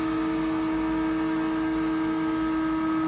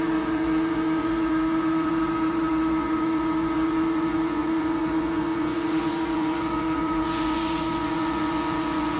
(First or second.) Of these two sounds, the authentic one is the first